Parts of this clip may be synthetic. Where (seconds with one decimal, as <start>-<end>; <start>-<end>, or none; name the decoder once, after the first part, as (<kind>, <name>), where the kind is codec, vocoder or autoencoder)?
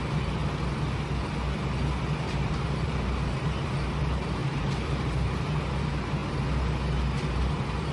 0.0-0.4 (vocoder, BigVGAN v2); 2.0-6.2; 7.3-7.9